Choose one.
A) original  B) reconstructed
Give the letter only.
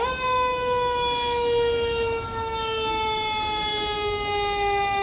B